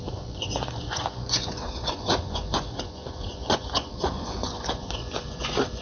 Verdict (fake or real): fake